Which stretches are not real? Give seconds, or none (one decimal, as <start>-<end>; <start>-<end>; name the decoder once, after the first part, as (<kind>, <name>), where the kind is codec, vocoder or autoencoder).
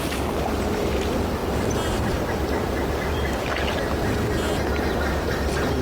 none